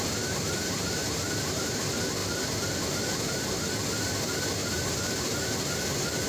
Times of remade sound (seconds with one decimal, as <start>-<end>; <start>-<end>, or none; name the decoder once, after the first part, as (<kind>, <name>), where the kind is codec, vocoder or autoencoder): 1.0-1.8 (vocoder, BigVGAN v2); 4.6-5.8